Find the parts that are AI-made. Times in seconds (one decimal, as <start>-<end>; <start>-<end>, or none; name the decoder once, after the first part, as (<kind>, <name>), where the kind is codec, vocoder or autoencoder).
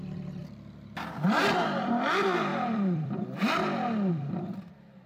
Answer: 0.0-0.4 (vocoder, BigVGAN v2); 1.6-3.6; 4.1-5.1